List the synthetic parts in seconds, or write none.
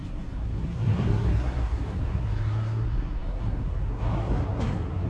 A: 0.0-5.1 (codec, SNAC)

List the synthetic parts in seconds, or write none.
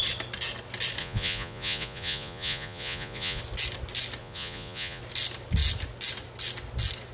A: 1.0-3.4 (vocoder, Vocos); 4.2-5.0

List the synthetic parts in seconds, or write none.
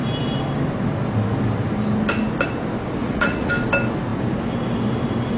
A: 3.0-3.5 (vocoder, Vocos)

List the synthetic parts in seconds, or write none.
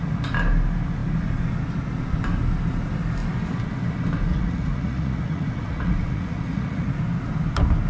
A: 4.3-7.0 (vocoder, Vocos)